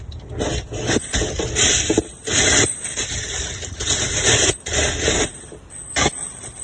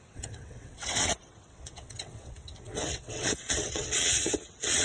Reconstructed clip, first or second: second